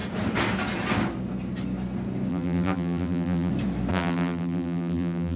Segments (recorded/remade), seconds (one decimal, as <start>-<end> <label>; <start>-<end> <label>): 0.0-2.3 recorded; 2.3-3.5 remade; 3.5-3.9 recorded; 3.9-5.4 remade